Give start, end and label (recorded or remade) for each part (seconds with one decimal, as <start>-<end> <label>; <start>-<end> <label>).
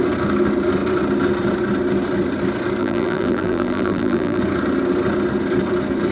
0.0-2.8 recorded; 2.8-4.4 remade; 4.4-6.1 recorded